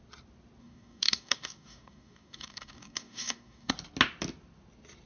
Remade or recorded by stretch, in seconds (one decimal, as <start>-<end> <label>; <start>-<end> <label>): 0.0-0.6 recorded; 0.6-3.7 remade; 3.7-5.1 recorded